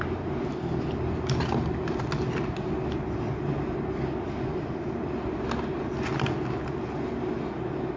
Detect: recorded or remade recorded